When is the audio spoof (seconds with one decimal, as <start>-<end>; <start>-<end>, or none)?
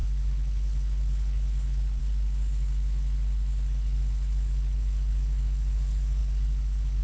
0.0-7.0